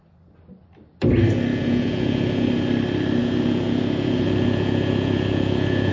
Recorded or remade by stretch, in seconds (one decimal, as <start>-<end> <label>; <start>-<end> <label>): 0.0-1.5 recorded; 1.5-2.7 remade; 2.7-3.2 recorded; 3.2-5.9 remade